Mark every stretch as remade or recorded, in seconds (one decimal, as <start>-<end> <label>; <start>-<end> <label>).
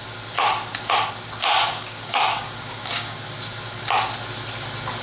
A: 0.0-1.6 recorded; 1.6-3.2 remade; 3.2-5.0 recorded